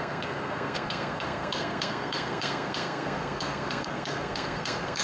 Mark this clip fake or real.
fake